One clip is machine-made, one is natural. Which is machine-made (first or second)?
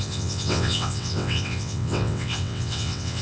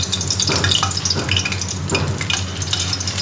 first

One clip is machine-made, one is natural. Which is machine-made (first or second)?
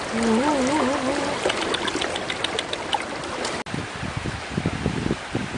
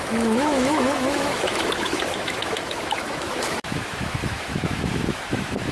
second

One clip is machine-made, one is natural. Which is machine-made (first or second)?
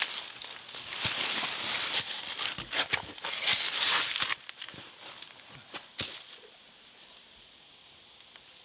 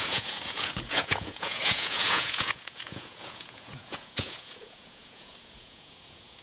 second